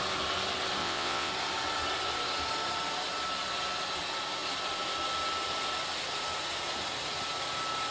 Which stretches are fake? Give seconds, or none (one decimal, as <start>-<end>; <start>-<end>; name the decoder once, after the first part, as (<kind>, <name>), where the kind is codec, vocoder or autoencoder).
0.8-1.3 (vocoder, WaveNeXt)